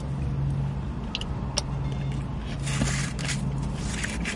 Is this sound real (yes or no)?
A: yes